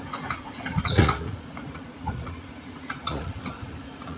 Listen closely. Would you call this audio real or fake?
fake